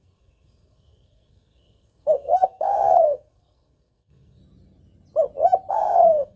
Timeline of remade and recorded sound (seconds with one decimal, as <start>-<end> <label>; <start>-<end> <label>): 0.0-4.4 remade; 4.4-5.7 recorded; 5.7-6.4 remade